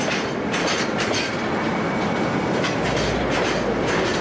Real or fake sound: real